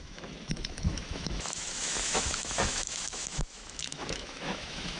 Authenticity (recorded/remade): remade